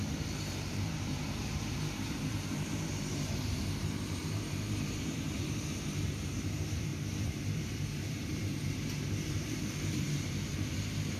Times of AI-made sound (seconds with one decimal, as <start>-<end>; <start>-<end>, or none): 0.0-11.2